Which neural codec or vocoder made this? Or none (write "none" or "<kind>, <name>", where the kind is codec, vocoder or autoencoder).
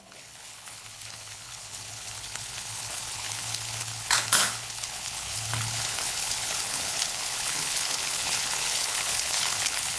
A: codec, HILCodec